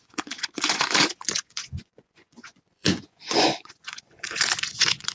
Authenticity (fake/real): fake